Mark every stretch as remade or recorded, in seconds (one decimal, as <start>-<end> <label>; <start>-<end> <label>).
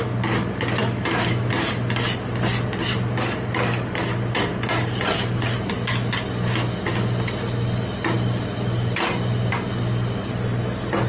0.0-0.8 recorded; 0.8-1.5 remade; 1.5-11.1 recorded